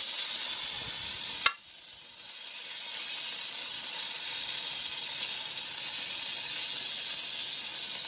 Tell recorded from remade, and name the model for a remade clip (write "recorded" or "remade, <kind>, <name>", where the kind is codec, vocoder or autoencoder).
recorded